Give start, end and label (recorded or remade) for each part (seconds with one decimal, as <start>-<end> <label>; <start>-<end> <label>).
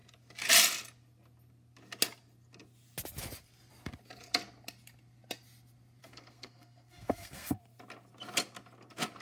0.0-6.0 recorded; 6.0-7.6 remade; 7.6-9.2 recorded